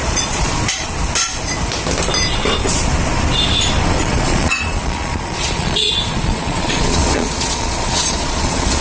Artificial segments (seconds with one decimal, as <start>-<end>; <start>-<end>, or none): 0.0-0.5; 4.0-8.8